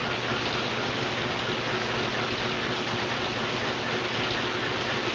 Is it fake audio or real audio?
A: real